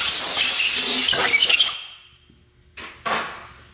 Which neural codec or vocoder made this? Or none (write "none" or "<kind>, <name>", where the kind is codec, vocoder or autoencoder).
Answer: none